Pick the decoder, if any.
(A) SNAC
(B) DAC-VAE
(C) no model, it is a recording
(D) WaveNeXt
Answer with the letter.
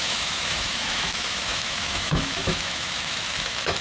B